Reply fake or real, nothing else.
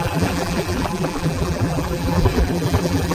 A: fake